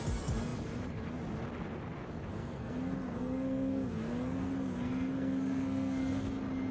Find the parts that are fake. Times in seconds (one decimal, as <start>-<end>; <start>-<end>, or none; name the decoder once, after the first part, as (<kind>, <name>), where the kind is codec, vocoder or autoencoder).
2.3-6.3 (codec, SNAC)

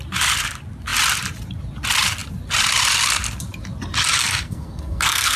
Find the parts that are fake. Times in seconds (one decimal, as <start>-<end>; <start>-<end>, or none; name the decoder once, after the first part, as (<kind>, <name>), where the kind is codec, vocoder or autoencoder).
4.2-5.4 (codec, SNAC)

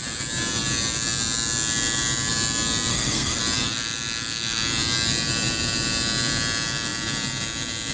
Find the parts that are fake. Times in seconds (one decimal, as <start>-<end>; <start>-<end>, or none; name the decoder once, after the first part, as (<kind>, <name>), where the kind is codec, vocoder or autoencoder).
2.9-3.4 (codec, SNAC)

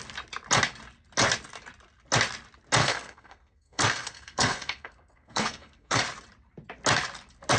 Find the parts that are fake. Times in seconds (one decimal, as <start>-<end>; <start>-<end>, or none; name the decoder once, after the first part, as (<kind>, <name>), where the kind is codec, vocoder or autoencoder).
2.8-6.0 (codec, SNAC)

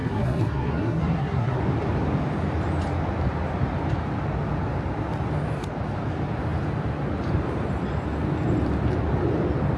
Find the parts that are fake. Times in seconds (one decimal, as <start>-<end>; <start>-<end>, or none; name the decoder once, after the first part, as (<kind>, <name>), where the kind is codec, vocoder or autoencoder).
0.0-1.6 (codec, SNAC)

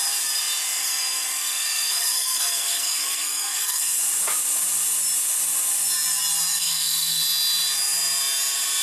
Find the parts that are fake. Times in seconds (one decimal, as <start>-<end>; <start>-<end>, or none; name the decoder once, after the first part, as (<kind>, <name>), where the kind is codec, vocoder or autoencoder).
0.8-4.0 (codec, SNAC); 6.5-7.2

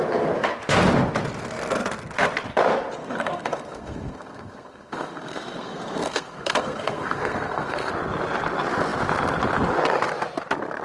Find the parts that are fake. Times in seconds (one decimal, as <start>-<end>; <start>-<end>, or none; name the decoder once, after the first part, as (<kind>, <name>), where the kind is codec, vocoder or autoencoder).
3.0-7.9 (codec, SNAC)